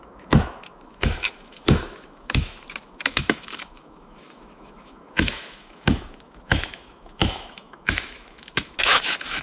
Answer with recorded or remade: remade